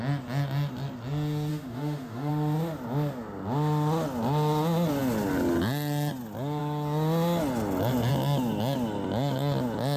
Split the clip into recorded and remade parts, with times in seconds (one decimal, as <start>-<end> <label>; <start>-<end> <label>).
0.0-1.5 recorded; 1.5-2.3 remade; 2.3-10.0 recorded

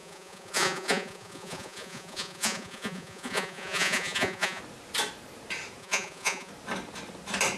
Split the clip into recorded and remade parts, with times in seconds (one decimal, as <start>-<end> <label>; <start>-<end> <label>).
0.0-4.6 remade; 4.6-5.8 recorded; 5.8-6.5 remade; 6.5-7.6 recorded

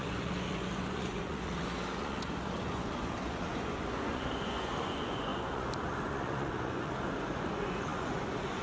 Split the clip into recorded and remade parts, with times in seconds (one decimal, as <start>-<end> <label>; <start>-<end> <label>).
0.0-8.6 remade

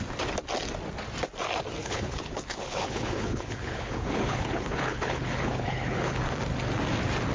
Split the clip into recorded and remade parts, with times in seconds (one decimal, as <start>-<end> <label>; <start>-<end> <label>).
0.0-1.8 recorded; 1.8-6.2 remade; 6.2-7.3 recorded

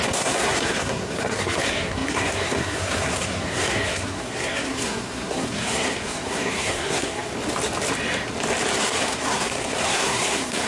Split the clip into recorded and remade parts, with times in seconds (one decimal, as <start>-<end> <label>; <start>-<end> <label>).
0.0-7.3 remade; 7.3-8.8 recorded; 8.8-10.7 remade

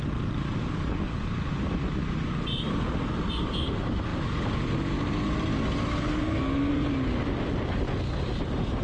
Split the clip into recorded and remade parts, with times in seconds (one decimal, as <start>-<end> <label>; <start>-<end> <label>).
0.0-8.8 recorded

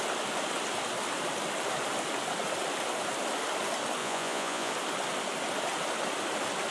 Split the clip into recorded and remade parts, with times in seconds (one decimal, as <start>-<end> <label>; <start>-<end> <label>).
0.0-4.0 recorded; 4.0-4.7 remade; 4.7-6.7 recorded